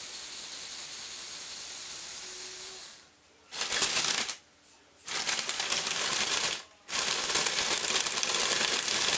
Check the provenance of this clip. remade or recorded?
recorded